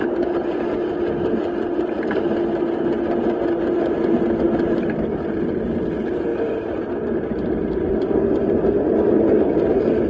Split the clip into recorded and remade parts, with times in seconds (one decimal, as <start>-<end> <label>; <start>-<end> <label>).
0.0-10.1 recorded